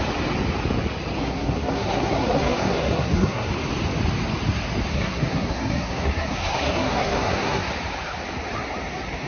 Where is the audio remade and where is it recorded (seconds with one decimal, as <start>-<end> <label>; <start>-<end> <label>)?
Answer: 0.0-1.2 recorded; 1.2-3.5 remade; 3.5-4.9 recorded; 4.9-7.7 remade; 7.7-9.3 recorded